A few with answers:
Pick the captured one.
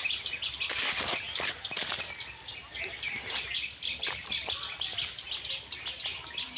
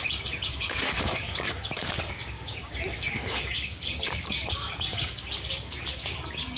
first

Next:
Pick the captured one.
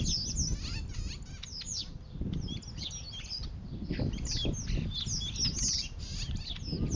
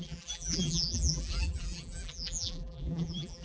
first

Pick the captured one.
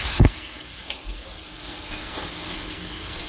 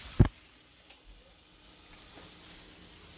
second